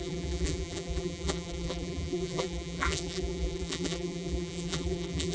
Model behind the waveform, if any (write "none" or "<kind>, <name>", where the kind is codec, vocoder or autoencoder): vocoder, BigVGAN v2